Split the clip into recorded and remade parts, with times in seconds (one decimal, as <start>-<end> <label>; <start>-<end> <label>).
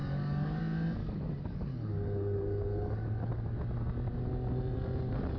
0.0-0.6 remade; 0.6-1.0 recorded; 1.0-3.3 remade; 3.3-5.4 recorded